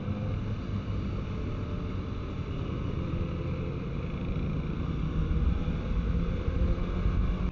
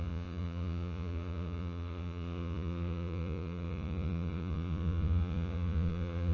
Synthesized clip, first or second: second